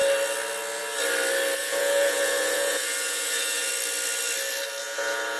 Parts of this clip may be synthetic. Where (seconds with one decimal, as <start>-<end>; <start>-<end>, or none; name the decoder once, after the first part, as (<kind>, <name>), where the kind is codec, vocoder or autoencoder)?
1.6-3.7 (vocoder, Vocos); 4.8-5.4